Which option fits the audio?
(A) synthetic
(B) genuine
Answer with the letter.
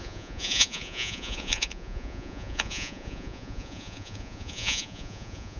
A